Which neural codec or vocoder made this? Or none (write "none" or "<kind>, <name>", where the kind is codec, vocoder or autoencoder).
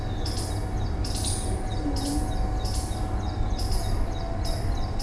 none